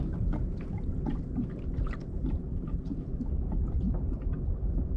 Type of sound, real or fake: real